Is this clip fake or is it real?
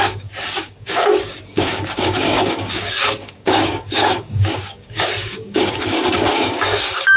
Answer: fake